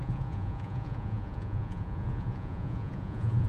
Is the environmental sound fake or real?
fake